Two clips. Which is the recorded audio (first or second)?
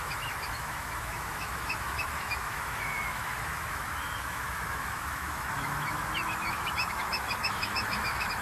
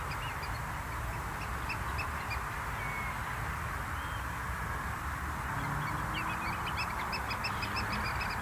second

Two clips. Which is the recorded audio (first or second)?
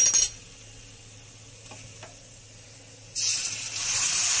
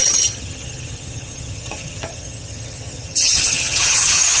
first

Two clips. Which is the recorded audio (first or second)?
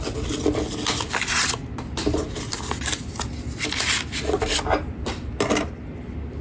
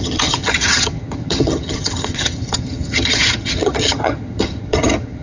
first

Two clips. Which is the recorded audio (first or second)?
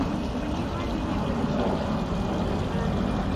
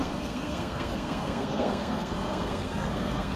first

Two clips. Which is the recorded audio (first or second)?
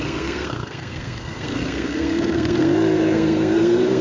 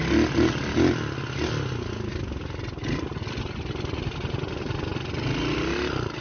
second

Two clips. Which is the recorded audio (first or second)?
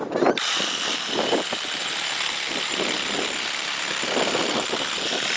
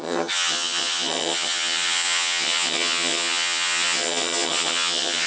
first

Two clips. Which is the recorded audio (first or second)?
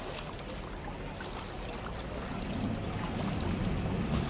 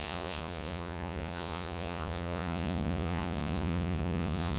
first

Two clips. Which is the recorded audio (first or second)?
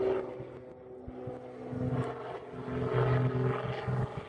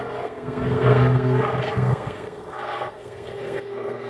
first